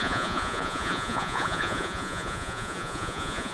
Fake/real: fake